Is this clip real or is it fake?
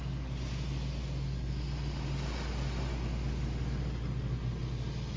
real